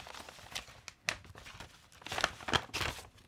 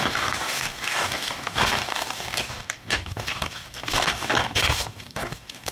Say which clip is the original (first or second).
first